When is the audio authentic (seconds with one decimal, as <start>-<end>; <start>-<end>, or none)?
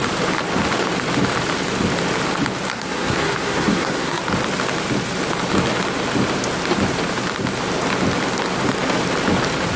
0.0-2.7; 4.2-9.8